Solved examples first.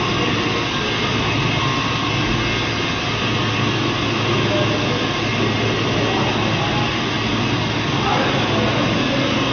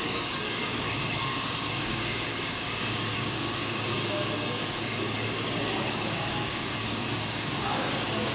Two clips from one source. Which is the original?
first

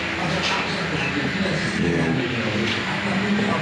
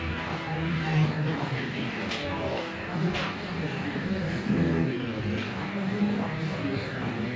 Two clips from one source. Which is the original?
first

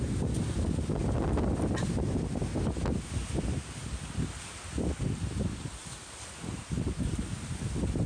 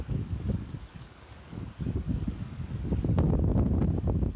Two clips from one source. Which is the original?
first